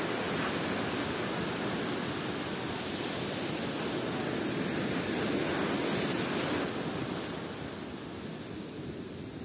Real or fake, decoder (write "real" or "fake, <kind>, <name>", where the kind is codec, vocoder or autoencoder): real